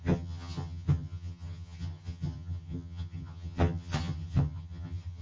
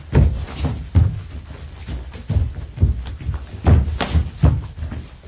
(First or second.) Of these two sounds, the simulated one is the first